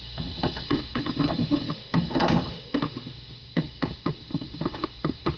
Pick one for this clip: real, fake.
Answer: fake